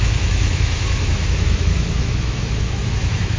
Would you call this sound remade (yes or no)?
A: yes